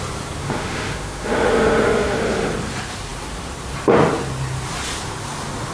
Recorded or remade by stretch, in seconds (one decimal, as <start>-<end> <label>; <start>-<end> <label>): 0.0-0.4 recorded; 0.4-2.2 remade; 2.2-5.7 recorded